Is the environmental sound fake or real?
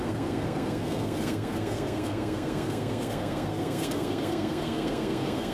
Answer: fake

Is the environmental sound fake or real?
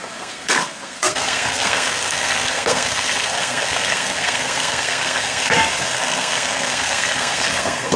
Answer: fake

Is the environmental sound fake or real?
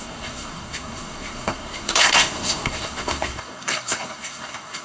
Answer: fake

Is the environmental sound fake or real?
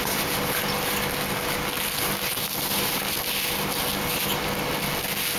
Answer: real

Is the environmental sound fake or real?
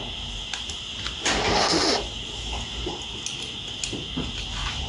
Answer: real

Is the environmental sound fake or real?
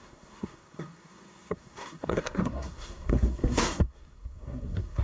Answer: fake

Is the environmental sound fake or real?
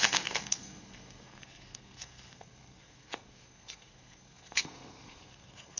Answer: fake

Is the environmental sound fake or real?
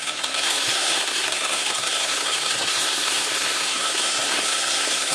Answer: fake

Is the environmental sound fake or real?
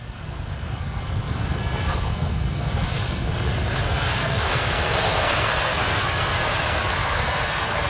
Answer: fake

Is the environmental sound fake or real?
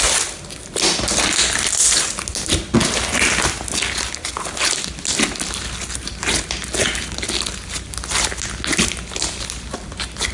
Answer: real